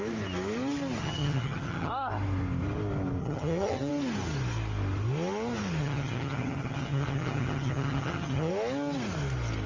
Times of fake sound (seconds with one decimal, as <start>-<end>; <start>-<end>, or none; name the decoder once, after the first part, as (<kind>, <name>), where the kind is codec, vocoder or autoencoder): 1.0-1.9 (vocoder, HiFi-GAN); 3.2-3.9; 5.8-8.5